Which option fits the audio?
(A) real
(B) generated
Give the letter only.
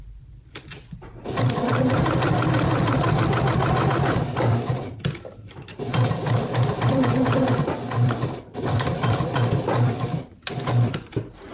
B